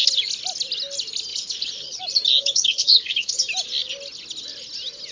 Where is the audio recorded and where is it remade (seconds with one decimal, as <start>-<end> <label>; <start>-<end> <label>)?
0.0-1.3 recorded; 1.3-2.0 remade; 2.0-2.4 recorded; 2.4-3.4 remade; 3.4-5.1 recorded